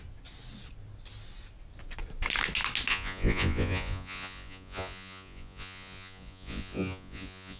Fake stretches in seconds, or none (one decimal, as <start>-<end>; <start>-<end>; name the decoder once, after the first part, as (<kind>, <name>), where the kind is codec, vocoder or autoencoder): 2.9-7.6 (vocoder, Vocos)